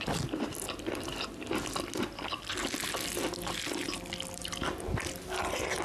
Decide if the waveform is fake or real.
real